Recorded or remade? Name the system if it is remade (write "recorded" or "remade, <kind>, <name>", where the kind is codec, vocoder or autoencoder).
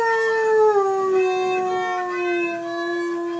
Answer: recorded